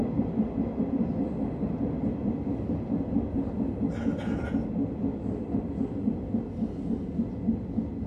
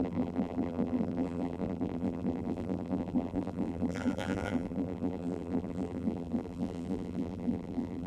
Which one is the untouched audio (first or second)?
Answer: first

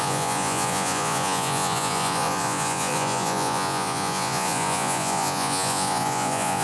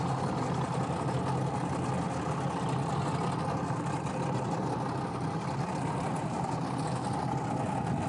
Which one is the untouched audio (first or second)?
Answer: second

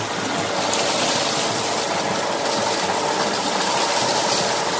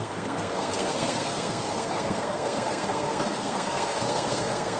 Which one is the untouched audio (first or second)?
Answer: first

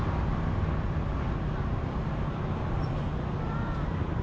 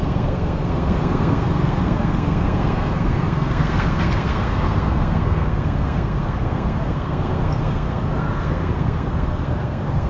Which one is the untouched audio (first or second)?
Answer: first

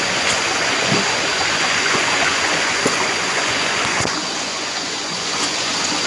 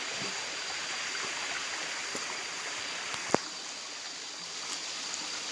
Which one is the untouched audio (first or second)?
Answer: second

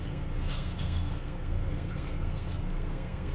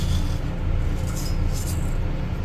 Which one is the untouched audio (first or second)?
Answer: second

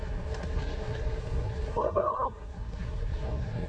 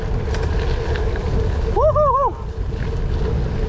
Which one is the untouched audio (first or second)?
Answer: second